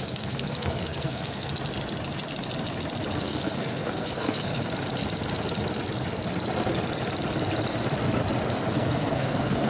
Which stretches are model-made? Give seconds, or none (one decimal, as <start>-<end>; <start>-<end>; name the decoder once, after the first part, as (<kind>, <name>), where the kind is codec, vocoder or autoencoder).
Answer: 0.0-1.5 (codec, SNAC); 3.2-4.6; 8.7-9.7